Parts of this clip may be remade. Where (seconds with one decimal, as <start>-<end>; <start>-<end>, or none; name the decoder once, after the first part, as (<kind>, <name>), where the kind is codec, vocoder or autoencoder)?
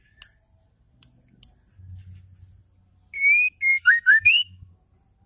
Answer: 3.7-4.7 (codec, SNAC)